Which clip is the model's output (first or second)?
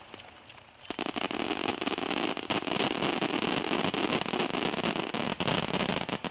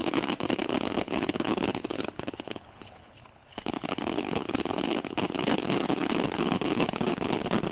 second